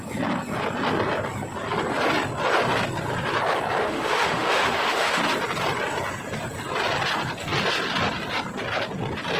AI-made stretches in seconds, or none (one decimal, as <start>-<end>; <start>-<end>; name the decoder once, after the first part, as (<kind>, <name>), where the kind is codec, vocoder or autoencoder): 3.8-5.2 (autoencoder, DAC-VAE)